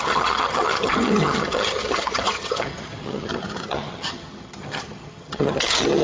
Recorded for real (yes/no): no